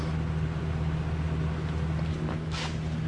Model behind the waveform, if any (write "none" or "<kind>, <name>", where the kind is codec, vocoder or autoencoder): none